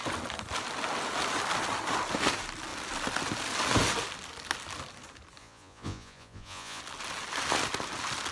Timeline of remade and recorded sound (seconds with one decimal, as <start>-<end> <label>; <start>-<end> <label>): 0.0-5.4 recorded; 5.4-6.8 remade; 6.8-8.3 recorded